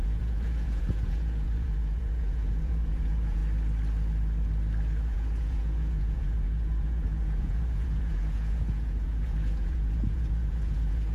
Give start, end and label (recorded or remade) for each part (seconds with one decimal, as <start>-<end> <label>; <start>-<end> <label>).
0.0-3.4 remade; 3.4-5.0 recorded; 5.0-11.1 remade